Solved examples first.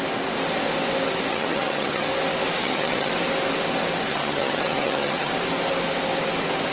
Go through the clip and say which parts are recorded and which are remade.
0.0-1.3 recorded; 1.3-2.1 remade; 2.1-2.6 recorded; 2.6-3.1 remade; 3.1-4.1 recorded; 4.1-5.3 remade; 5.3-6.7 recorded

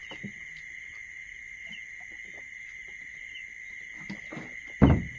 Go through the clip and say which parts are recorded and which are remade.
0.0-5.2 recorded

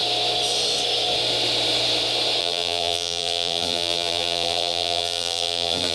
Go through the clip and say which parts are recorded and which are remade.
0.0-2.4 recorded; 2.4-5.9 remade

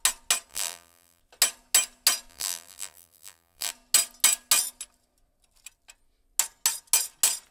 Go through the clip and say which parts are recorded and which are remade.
0.0-0.5 recorded; 0.5-1.2 remade; 1.2-2.3 recorded; 2.3-3.7 remade; 3.7-7.5 recorded

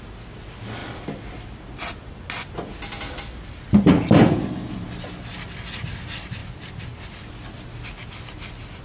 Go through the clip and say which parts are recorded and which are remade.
0.0-8.8 recorded

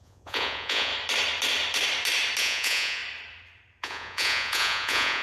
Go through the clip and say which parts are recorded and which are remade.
0.0-0.9 remade; 0.9-2.4 recorded; 2.4-3.0 remade; 3.0-3.8 recorded; 3.8-5.2 remade

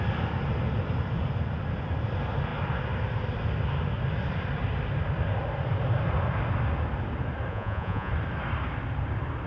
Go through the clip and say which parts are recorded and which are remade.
0.0-7.5 recorded; 7.5-8.1 remade; 8.1-9.5 recorded

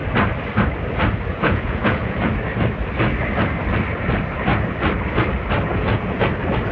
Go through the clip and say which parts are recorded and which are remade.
0.0-1.3 recorded; 1.3-2.3 remade; 2.3-5.7 recorded; 5.7-6.3 remade; 6.3-6.7 recorded